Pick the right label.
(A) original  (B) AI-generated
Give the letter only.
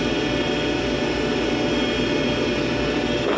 A